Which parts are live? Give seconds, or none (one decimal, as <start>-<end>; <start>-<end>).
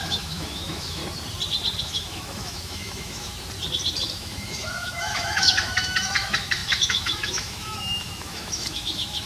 1.0-1.8; 3.3-4.2